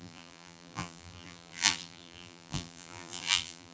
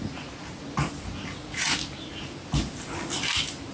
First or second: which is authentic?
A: second